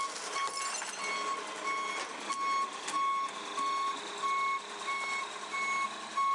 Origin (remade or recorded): recorded